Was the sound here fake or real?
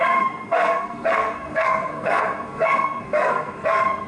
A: fake